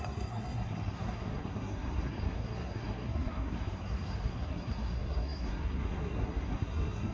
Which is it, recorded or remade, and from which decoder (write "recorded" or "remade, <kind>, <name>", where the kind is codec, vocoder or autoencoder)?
remade, codec, SNAC